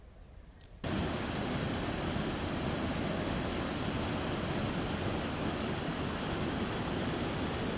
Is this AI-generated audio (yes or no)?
no